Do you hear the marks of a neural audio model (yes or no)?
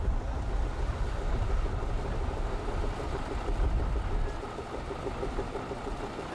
no